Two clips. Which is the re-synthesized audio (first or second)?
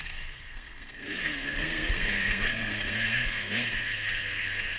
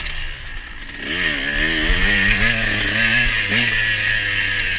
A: first